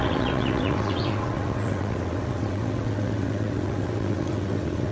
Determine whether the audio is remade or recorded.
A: remade